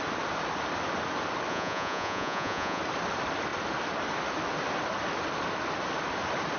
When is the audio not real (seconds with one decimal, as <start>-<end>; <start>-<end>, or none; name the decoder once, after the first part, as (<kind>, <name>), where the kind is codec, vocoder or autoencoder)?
1.5-2.8 (vocoder, Vocos)